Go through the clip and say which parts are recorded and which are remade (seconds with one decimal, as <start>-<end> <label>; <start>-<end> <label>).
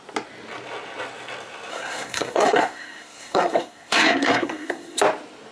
0.0-1.7 recorded; 1.7-5.0 remade; 5.0-5.5 recorded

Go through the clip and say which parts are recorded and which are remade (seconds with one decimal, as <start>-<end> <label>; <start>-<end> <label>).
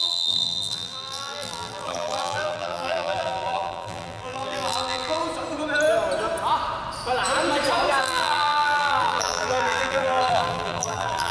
0.0-5.2 remade; 5.2-8.0 recorded; 8.0-11.3 remade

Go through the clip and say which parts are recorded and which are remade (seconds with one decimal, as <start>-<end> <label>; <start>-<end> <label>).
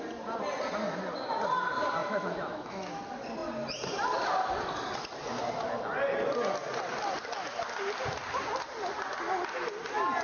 0.0-2.0 recorded; 2.0-3.0 remade; 3.0-10.2 recorded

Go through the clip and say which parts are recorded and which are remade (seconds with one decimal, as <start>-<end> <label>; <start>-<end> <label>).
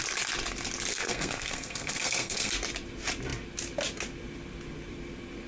0.0-0.9 recorded; 0.9-2.5 remade; 2.5-5.5 recorded